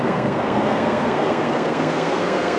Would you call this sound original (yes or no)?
no